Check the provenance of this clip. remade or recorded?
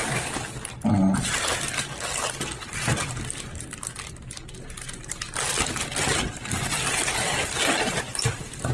recorded